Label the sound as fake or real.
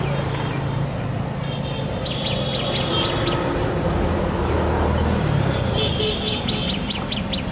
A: real